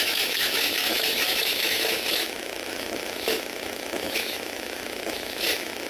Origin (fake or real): fake